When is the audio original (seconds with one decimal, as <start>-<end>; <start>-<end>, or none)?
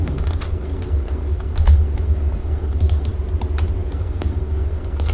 3.1-3.9